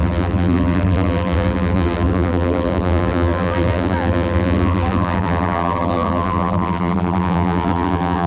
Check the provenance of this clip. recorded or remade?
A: remade